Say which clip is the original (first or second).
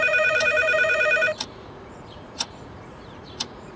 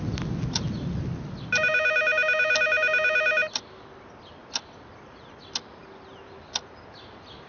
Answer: second